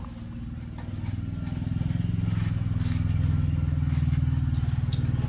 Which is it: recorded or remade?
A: recorded